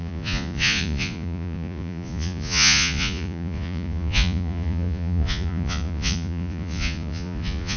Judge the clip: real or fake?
fake